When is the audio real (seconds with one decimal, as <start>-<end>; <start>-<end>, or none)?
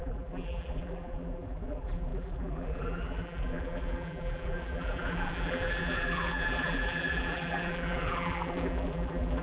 none